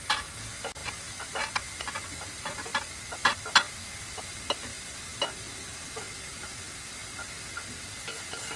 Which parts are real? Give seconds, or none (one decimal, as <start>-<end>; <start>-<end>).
0.0-8.6